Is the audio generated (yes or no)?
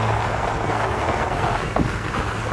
yes